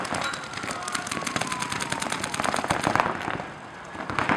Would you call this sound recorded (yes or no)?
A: yes